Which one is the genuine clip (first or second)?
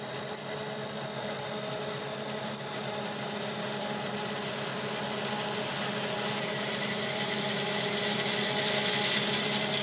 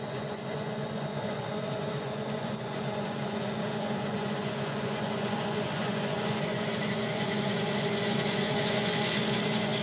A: first